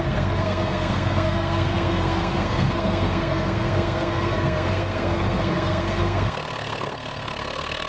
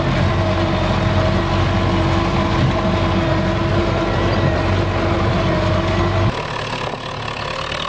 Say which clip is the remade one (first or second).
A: first